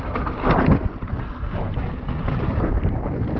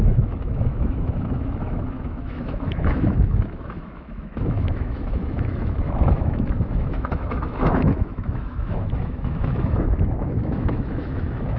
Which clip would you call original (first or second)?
first